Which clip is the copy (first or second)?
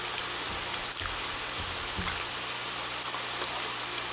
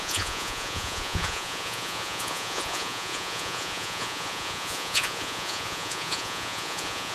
second